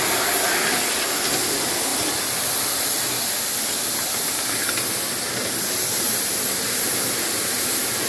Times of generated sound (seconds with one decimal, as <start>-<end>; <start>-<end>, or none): none